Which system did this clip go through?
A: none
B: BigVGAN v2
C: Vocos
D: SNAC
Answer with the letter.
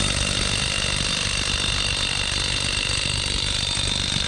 A